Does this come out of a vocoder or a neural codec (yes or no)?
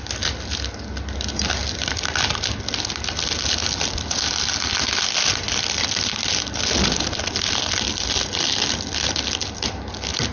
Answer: no